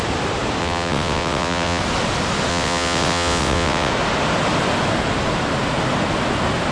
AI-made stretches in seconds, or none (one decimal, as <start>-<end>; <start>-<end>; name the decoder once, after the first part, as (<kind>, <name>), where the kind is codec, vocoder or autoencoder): 0.6-1.8 (vocoder, WaveNeXt); 2.5-3.9